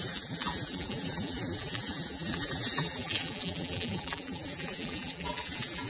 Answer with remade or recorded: remade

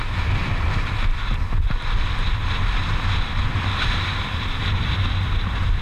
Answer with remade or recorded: remade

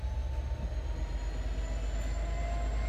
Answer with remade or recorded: recorded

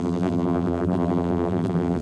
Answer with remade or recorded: remade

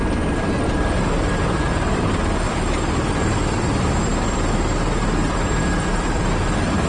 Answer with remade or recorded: remade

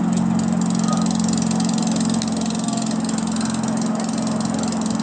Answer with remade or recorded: recorded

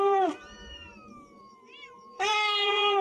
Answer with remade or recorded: remade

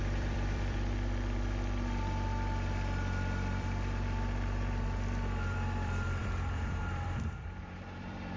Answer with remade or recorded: remade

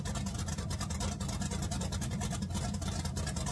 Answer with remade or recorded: recorded